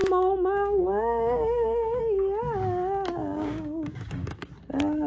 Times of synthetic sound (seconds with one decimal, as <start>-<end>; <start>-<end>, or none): 0.0-2.0; 3.2-4.5